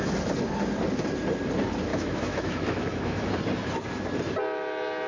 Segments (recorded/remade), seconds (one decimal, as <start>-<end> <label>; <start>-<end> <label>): 0.0-1.9 recorded; 1.9-3.3 remade; 3.3-5.1 recorded